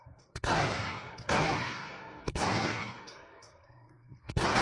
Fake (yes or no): yes